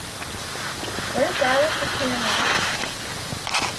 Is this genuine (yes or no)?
yes